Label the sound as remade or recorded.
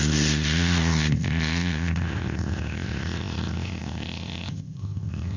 remade